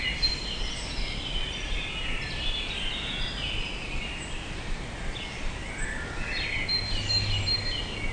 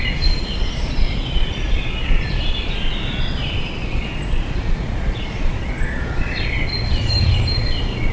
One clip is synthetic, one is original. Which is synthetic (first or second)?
second